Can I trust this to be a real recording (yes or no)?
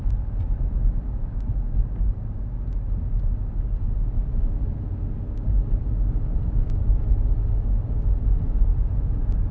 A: yes